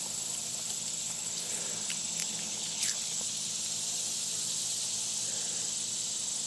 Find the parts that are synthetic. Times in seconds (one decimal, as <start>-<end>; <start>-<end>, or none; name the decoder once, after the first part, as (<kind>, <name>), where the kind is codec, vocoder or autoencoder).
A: 1.0-1.6 (codec, HILCodec); 2.2-3.3